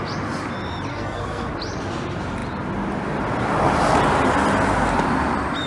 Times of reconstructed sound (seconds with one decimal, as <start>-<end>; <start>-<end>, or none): 0.9-1.5